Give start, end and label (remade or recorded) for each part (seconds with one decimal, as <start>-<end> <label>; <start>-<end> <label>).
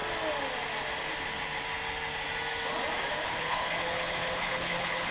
0.0-3.1 recorded; 3.1-5.1 remade